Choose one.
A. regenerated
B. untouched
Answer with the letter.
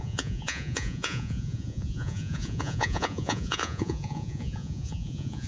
A